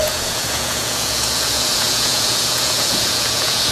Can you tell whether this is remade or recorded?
remade